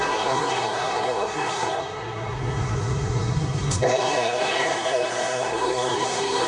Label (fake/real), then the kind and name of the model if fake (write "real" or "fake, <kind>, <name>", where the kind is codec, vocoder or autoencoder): fake, codec, SNAC